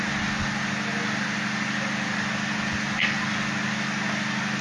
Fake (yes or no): no